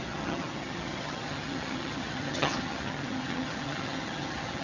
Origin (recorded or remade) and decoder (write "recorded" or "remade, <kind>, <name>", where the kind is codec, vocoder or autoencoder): remade, vocoder, HiFi-GAN